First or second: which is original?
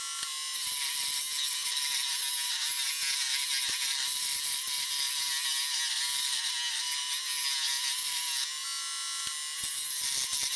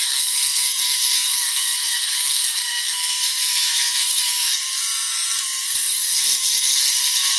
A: first